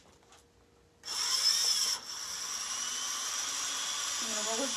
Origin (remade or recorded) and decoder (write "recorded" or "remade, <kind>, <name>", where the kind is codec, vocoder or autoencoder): recorded